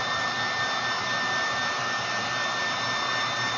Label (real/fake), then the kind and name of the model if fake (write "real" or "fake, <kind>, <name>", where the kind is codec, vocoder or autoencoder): real